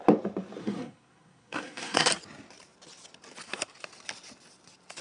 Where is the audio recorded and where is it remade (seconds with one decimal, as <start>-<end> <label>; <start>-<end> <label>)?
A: 0.0-0.6 recorded; 0.6-2.1 remade; 2.1-5.0 recorded